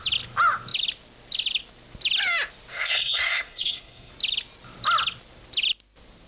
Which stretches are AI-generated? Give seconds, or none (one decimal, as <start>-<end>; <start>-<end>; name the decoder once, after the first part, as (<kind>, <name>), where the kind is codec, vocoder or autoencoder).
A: 2.7-4.1 (codec, SNAC)